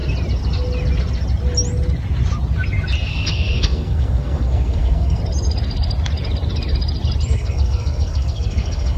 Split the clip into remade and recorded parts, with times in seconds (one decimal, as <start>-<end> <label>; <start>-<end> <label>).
0.0-3.1 recorded; 3.1-5.2 remade; 5.2-7.3 recorded; 7.3-9.0 remade